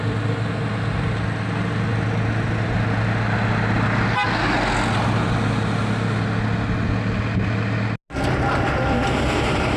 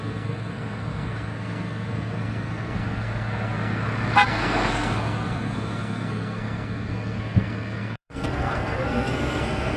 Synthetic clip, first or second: second